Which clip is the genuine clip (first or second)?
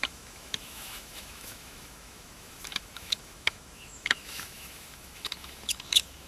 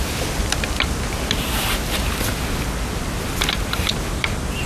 second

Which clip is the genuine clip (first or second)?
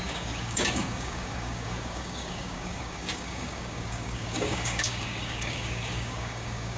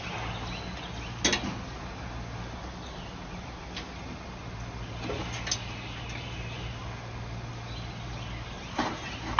second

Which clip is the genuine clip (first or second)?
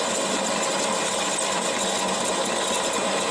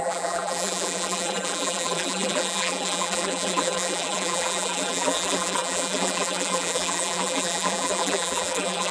first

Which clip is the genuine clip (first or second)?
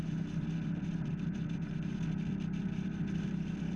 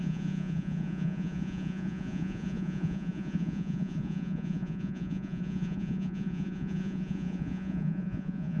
first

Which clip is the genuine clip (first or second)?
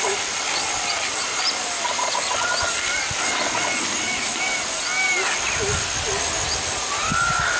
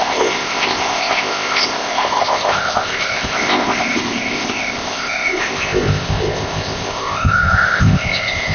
first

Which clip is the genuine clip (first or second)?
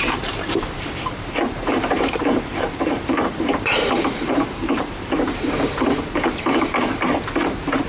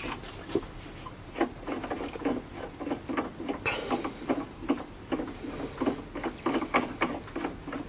second